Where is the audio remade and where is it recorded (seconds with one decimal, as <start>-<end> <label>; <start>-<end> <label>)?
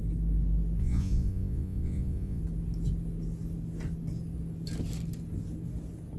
0.0-0.8 recorded; 0.8-2.4 remade; 2.4-6.2 recorded